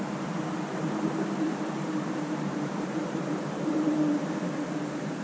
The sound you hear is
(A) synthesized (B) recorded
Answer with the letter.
A